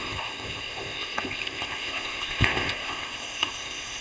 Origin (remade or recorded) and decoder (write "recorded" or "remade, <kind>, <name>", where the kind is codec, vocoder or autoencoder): remade, codec, ZipCodec